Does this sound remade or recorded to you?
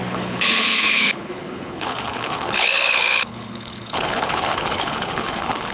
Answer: remade